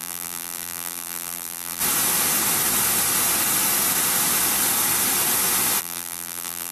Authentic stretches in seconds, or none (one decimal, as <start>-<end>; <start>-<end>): 1.8-5.8